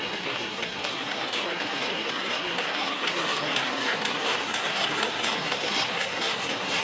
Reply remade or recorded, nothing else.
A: remade